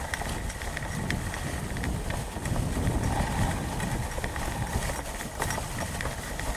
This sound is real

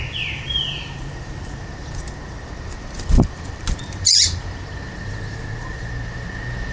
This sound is fake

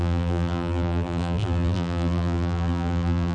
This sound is fake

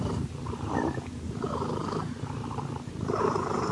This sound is fake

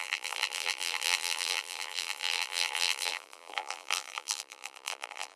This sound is fake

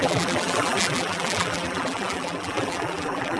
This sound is fake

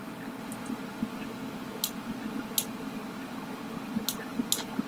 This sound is real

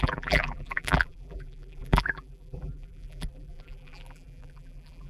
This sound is fake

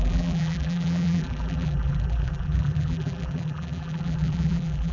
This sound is fake